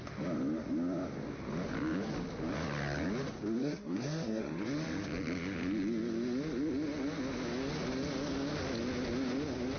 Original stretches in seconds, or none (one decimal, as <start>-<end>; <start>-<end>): 0.0-3.6; 4.7-9.8